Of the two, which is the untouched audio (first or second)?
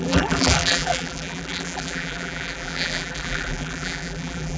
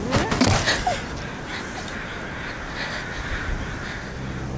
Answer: second